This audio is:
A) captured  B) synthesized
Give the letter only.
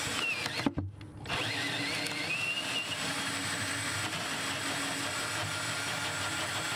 A